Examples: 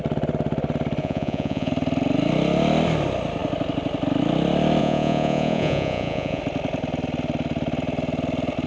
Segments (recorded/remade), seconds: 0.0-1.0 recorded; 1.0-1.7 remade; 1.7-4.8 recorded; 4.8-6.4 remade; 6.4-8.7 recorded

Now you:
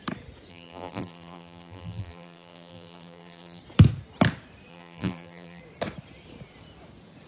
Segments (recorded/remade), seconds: 0.0-0.5 recorded; 0.5-3.6 remade; 3.6-4.7 recorded; 4.7-5.6 remade; 5.6-7.3 recorded

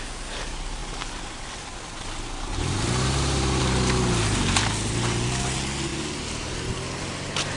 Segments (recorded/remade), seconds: 0.0-7.6 recorded

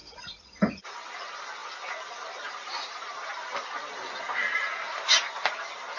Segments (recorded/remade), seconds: 0.0-0.9 remade; 0.9-6.0 recorded

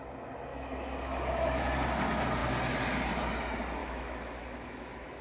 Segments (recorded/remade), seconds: 0.0-0.5 recorded; 0.5-1.7 remade; 1.7-3.8 recorded; 3.8-5.2 remade

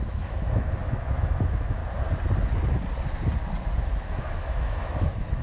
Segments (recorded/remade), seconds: 0.0-1.8 remade; 1.8-4.0 recorded; 4.0-5.4 remade

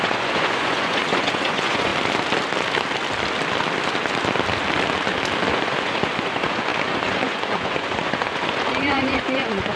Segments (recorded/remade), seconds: 0.0-1.9 remade; 1.9-5.5 recorded; 5.5-9.8 remade

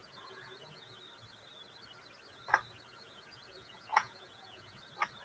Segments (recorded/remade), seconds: 0.0-1.0 remade; 1.0-2.9 recorded; 2.9-4.8 remade; 4.8-5.2 recorded